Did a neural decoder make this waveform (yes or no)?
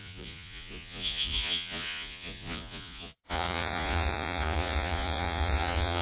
yes